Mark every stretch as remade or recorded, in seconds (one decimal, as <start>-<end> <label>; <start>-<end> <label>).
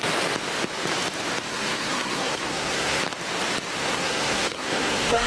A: 0.0-1.5 recorded; 1.5-3.0 remade; 3.0-3.8 recorded; 3.8-5.3 remade